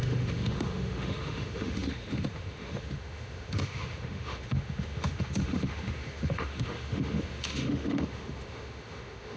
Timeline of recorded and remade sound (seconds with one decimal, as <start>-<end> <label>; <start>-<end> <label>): 0.0-9.4 remade